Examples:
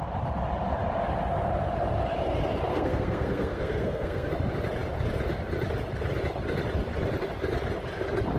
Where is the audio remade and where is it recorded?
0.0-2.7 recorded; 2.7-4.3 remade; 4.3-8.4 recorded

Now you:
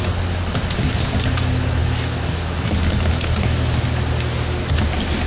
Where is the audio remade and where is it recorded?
0.0-5.3 recorded

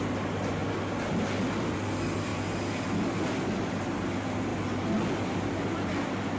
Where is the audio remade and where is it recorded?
0.0-2.3 remade; 2.3-4.1 recorded; 4.1-4.5 remade; 4.5-5.4 recorded; 5.4-6.4 remade